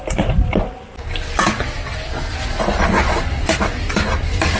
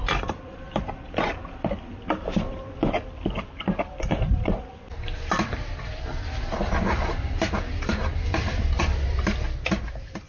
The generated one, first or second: second